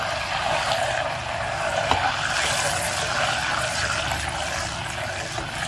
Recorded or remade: recorded